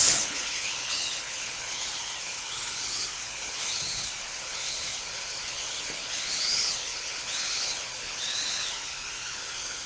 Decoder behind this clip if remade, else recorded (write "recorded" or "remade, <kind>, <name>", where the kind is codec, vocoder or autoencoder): remade, codec, HILCodec